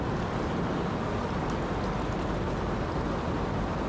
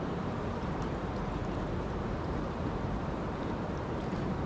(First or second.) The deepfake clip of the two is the second